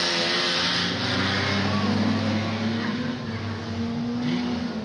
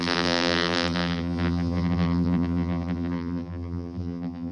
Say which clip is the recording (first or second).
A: first